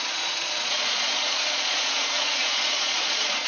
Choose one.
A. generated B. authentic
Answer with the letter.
A